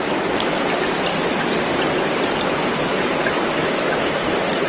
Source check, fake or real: real